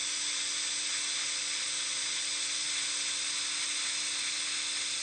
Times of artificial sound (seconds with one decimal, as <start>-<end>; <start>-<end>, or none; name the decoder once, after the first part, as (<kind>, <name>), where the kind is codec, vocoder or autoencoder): none